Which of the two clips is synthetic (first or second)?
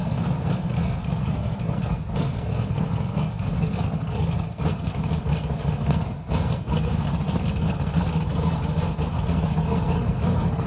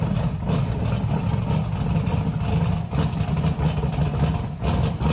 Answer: first